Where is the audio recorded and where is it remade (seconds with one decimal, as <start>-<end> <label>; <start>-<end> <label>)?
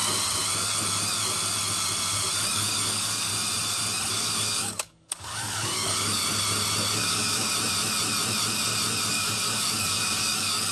0.0-2.4 recorded; 2.4-3.3 remade; 3.3-4.1 recorded; 4.1-6.2 remade; 6.2-6.9 recorded; 6.9-7.5 remade; 7.5-9.1 recorded; 9.1-10.7 remade